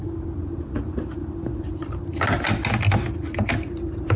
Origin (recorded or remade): recorded